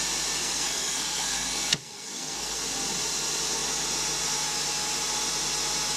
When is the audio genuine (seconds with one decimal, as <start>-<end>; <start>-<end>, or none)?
0.0-0.4; 2.6-6.0